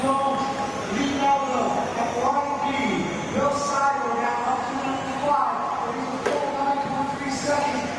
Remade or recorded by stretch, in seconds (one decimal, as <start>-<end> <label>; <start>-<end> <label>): 0.0-8.0 recorded